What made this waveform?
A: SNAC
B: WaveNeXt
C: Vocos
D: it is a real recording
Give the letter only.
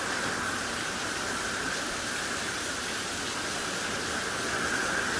D